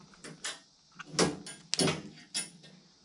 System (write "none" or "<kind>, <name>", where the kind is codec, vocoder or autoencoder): none